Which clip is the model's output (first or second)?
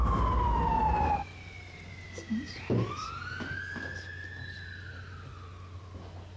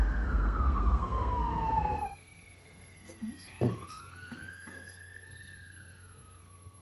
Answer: second